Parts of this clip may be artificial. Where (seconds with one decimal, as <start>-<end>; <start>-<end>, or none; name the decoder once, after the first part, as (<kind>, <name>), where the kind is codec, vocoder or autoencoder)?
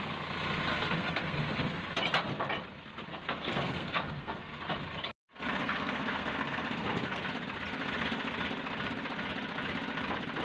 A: 0.7-1.8 (codec, SNAC); 3.1-4.6; 5.6-7.3